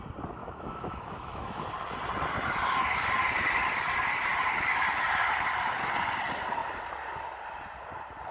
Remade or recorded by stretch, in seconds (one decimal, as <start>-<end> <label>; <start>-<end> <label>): 0.0-0.4 recorded; 0.4-1.7 remade; 1.7-8.3 recorded